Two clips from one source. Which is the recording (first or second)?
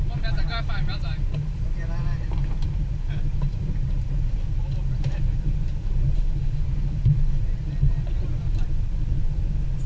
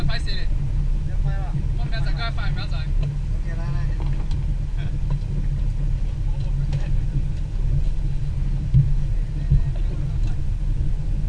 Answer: second